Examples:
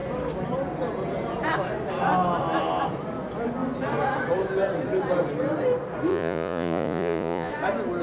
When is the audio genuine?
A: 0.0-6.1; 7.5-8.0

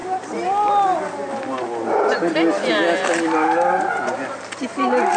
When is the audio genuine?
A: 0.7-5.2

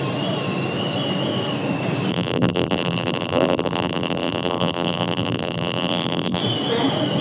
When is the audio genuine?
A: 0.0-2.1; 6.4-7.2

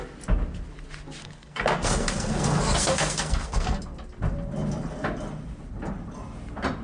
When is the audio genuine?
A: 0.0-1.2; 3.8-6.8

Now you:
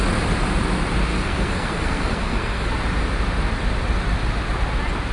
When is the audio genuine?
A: 0.0-1.1; 2.7-5.1